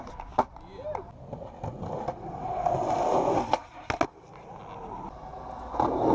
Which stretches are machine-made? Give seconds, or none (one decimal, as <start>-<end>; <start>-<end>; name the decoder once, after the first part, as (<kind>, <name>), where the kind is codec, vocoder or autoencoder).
none